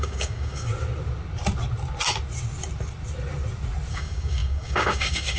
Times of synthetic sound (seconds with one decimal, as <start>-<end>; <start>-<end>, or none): 0.0-0.7; 3.9-5.4